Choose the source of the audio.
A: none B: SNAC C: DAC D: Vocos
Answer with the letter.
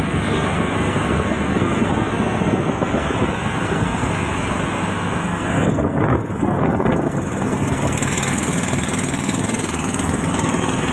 B